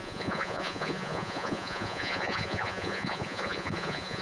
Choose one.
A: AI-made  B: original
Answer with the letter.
A